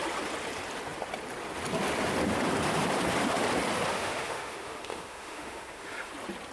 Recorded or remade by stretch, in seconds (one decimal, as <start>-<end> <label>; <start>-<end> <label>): 0.0-3.9 recorded; 3.9-6.1 remade; 6.1-6.5 recorded